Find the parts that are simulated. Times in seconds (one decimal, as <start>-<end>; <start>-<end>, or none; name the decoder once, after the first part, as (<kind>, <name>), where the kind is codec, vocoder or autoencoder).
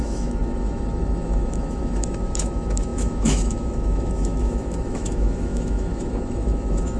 0.0-7.0 (autoencoder, DAC-VAE)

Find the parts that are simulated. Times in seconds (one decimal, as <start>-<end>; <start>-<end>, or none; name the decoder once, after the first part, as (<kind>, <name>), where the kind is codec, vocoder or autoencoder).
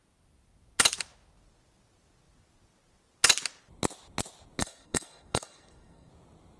4.6-6.1 (codec, SNAC)